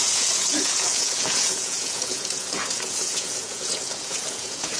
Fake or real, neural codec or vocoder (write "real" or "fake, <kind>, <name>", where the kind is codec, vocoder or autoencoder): fake, vocoder, Vocos